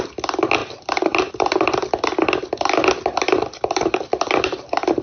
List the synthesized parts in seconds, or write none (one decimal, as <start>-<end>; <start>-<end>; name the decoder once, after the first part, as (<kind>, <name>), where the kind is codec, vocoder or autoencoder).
none